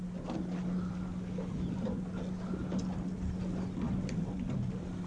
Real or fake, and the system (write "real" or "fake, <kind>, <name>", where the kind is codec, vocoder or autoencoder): real